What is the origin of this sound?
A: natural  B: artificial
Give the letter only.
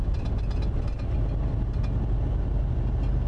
A